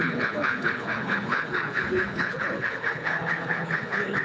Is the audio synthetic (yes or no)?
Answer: yes